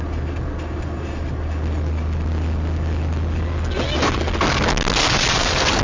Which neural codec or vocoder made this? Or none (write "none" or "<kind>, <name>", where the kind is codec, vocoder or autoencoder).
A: none